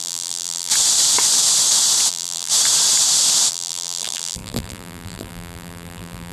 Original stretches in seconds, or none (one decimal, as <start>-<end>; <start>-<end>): 0.7-2.1; 2.5-3.5